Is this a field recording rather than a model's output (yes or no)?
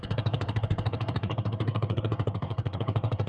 no